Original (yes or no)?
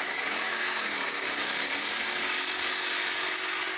no